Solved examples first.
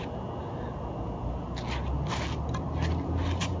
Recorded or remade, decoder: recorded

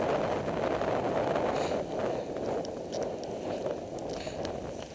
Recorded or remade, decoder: recorded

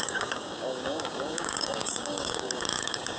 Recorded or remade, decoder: remade, codec, DAC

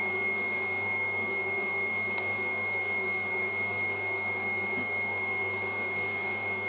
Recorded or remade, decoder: remade, codec, DAC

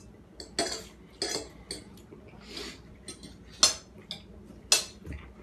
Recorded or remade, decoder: recorded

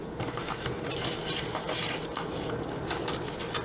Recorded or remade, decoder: recorded